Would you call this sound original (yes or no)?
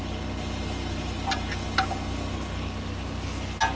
yes